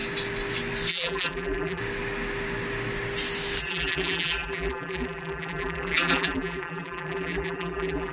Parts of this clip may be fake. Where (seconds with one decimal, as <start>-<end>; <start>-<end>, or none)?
0.9-1.8; 3.6-8.1